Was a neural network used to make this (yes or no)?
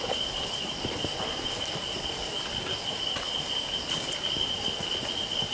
no